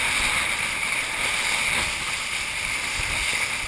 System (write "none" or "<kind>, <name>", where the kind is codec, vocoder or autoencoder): none